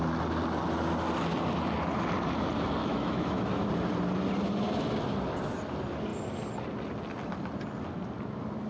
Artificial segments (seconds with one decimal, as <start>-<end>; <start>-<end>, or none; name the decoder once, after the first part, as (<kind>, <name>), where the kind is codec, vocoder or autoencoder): 2.8-3.7 (autoencoder, DAC-VAE)